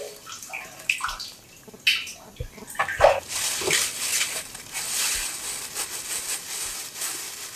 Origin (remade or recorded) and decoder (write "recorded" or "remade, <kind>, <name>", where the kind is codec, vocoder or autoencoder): recorded